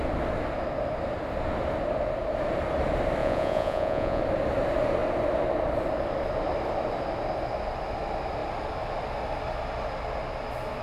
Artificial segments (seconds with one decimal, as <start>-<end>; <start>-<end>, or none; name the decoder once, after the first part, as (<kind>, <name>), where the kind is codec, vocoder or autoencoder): 3.2-4.2 (vocoder, Vocos)